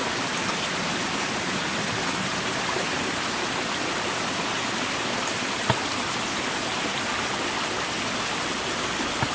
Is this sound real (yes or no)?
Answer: yes